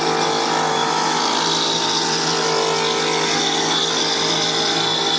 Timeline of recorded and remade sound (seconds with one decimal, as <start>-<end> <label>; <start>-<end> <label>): 0.0-0.7 recorded; 0.7-1.2 remade; 1.2-5.2 recorded